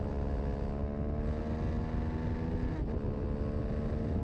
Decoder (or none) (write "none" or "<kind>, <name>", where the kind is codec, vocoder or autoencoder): none